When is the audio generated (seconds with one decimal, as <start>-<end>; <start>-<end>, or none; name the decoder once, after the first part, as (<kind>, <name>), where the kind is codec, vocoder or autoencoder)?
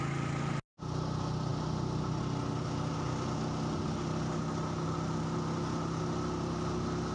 none